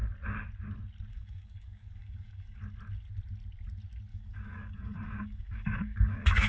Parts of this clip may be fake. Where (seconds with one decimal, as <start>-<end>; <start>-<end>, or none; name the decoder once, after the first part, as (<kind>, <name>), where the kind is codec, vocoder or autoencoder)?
1.1-2.6 (codec, DAC); 4.1-6.5